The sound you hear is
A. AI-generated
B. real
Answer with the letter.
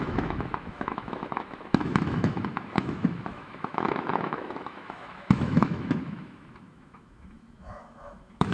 A